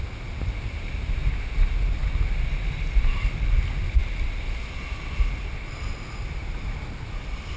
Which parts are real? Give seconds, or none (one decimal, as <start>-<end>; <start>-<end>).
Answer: 0.0-6.4